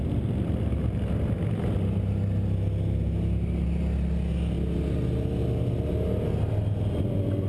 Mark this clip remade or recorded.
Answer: recorded